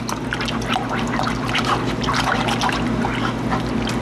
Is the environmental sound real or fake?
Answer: real